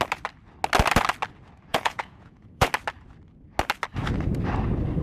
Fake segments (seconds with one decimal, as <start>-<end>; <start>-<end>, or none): 1.7-2.7

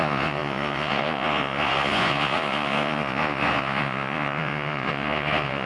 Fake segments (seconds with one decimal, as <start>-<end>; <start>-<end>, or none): 0.0-5.7

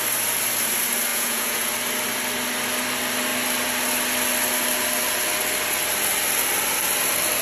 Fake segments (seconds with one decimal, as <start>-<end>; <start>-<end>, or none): 1.1-1.7

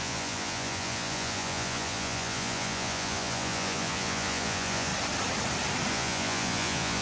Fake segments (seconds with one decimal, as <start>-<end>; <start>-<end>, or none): 0.0-4.9; 5.9-7.0

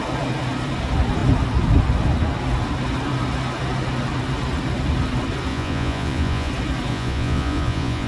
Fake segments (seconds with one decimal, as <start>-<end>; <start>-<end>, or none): 5.5-6.5; 6.9-8.1

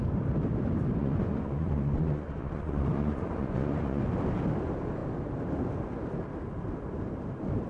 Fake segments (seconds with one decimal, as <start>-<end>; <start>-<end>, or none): 1.0-4.0